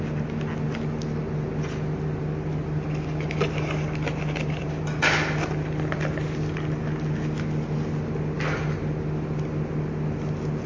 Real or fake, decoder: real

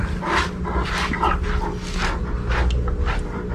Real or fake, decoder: real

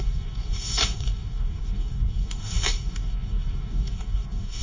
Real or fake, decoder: fake, codec, DAC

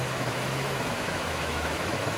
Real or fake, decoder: fake, autoencoder, DAC-VAE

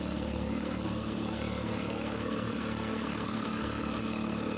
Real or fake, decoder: fake, codec, SNAC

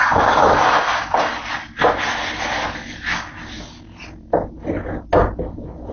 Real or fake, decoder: real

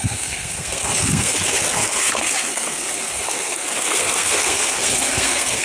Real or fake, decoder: fake, codec, SNAC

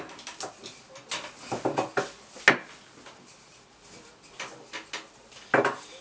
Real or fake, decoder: real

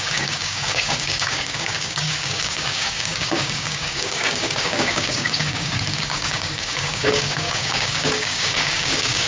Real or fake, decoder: fake, codec, DAC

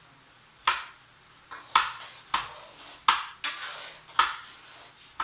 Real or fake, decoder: real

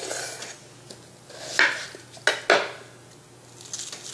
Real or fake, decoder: real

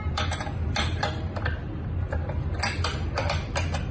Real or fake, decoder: real